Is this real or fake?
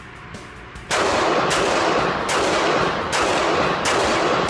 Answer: real